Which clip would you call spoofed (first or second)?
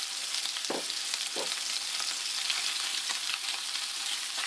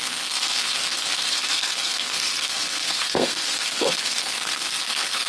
second